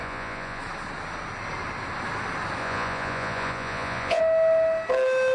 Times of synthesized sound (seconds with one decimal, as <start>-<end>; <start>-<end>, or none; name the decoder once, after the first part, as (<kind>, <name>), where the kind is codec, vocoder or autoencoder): 0.0-0.6 (vocoder, Vocos); 2.6-4.2

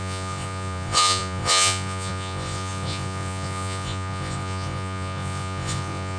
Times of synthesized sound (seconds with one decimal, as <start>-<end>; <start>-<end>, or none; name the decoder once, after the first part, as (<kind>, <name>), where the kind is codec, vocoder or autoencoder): 0.0-6.2 (vocoder, Vocos)

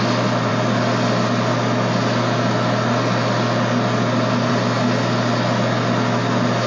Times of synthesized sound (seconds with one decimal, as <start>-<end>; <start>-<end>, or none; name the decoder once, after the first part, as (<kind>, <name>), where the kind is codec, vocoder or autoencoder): none

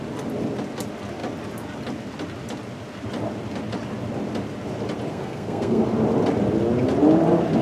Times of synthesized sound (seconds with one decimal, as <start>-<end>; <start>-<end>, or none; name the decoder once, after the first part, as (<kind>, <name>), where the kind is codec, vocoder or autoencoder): 5.1-5.8 (codec, SNAC)

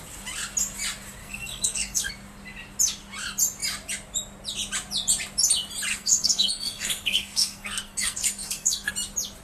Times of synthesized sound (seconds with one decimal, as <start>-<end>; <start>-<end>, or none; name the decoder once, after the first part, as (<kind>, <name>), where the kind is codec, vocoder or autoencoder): 1.2-2.1 (codec, SNAC); 5.9-8.9

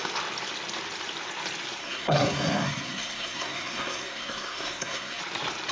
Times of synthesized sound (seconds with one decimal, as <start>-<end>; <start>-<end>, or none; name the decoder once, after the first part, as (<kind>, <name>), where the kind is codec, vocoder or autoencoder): 1.8-5.2 (codec, SNAC)